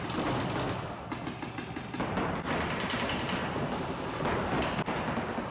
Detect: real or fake real